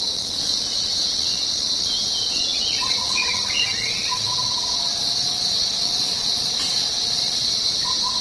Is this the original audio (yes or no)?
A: no